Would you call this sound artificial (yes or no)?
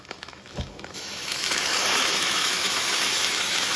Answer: yes